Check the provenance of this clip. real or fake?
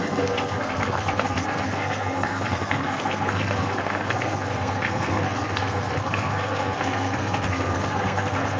fake